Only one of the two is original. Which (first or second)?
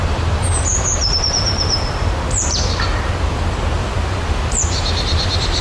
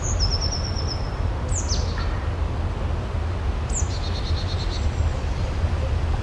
second